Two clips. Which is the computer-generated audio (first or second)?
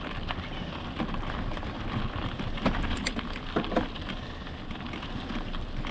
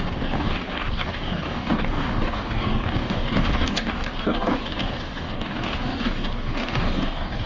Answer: second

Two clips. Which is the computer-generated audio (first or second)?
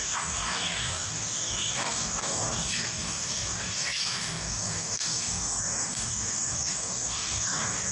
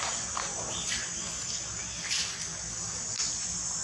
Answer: first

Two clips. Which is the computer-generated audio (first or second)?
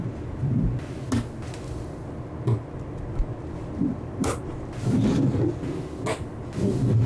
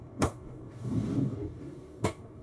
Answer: second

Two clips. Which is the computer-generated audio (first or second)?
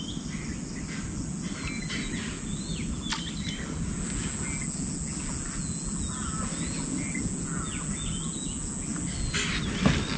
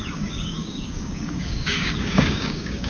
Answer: second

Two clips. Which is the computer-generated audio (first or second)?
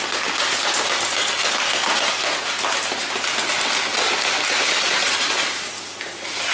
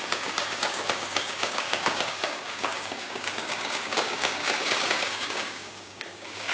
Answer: second